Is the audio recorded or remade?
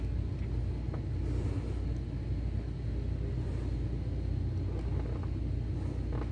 recorded